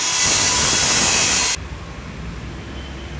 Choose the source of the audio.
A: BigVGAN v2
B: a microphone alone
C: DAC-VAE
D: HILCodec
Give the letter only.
B